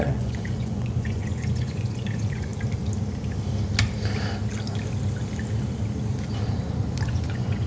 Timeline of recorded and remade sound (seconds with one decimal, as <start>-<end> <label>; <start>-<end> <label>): 0.0-2.5 remade; 2.5-7.1 recorded; 7.1-7.7 remade